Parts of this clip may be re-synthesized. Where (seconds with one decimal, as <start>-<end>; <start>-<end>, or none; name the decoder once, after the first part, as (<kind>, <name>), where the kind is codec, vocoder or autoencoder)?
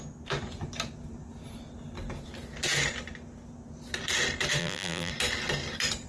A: 4.6-5.1 (vocoder, BigVGAN v2)